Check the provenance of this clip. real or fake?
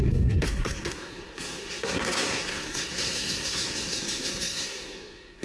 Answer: fake